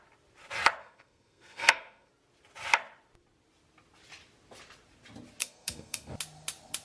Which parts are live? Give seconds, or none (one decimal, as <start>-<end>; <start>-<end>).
0.0-0.8; 2.1-5.4; 6.1-6.8